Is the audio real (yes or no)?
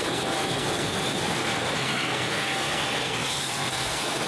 no